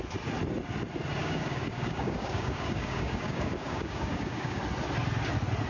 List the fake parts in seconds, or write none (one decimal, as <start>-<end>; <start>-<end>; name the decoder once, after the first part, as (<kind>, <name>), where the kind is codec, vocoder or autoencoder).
1.2-4.6 (codec, DAC)